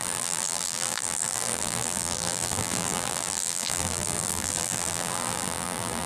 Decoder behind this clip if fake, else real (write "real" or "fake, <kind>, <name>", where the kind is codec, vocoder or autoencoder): fake, vocoder, BigVGAN v2